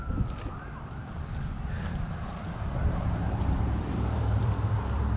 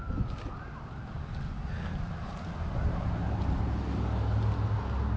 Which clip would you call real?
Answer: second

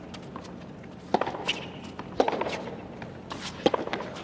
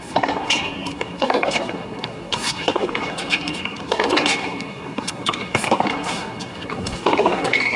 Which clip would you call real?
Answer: first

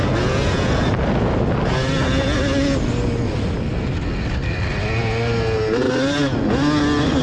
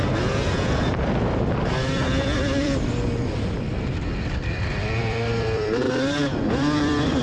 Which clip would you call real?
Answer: first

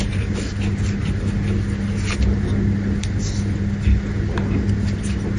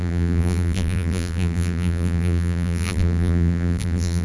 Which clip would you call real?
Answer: first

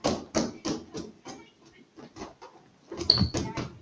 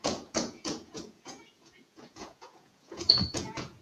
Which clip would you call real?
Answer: first